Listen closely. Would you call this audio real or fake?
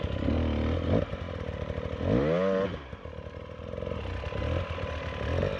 real